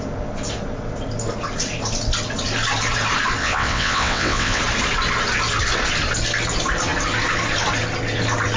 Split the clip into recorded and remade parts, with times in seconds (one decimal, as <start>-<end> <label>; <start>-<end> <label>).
0.0-3.4 recorded; 3.4-4.6 remade; 4.6-8.6 recorded